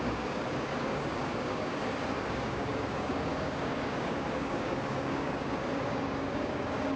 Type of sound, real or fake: fake